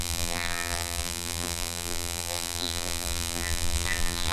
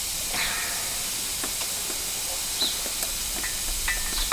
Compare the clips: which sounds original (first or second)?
second